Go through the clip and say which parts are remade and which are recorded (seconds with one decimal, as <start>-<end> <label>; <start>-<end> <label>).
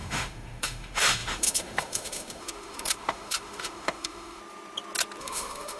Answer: 0.0-4.4 remade; 4.4-5.2 recorded; 5.2-5.8 remade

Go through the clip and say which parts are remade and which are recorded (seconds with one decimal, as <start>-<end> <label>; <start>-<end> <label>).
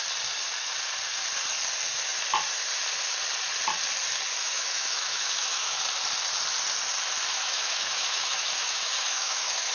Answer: 0.0-4.4 recorded; 4.4-5.8 remade; 5.8-7.3 recorded; 7.3-9.7 remade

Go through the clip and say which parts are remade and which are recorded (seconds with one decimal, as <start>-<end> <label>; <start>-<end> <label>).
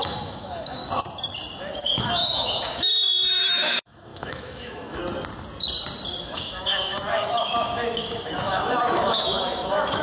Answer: 0.0-0.8 remade; 0.8-1.6 recorded; 1.6-5.0 remade; 5.0-6.2 recorded; 6.2-10.0 remade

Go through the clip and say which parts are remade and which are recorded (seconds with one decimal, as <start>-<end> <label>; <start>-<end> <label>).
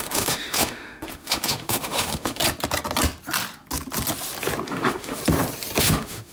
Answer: 0.0-2.4 remade; 2.4-4.7 recorded; 4.7-5.2 remade; 5.2-5.8 recorded; 5.8-6.3 remade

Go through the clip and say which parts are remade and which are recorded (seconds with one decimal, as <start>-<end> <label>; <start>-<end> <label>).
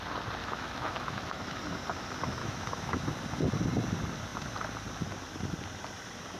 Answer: 0.0-0.4 recorded; 0.4-1.6 remade; 1.6-2.4 recorded; 2.4-3.1 remade; 3.1-6.4 recorded